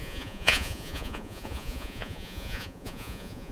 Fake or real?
fake